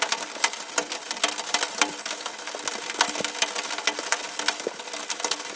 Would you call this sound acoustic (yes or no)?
yes